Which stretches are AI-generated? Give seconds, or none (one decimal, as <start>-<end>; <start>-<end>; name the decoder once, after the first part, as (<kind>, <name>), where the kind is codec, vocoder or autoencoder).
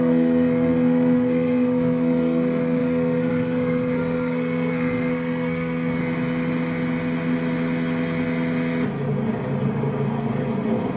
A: 0.0-6.0 (codec, SNAC)